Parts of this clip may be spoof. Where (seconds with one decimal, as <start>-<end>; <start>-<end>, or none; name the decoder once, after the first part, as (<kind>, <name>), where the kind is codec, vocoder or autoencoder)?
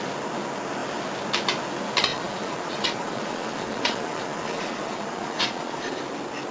2.1-6.0 (vocoder, Vocos)